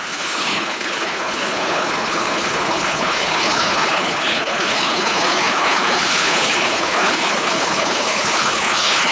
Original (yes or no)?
no